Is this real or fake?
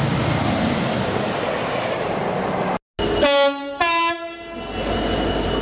real